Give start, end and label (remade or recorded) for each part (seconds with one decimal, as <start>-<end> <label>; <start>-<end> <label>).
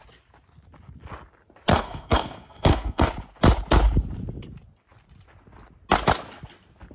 0.0-1.7 recorded; 1.7-3.1 remade; 3.1-6.9 recorded